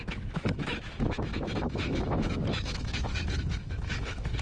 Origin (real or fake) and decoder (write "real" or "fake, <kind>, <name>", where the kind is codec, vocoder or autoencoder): fake, autoencoder, DAC-VAE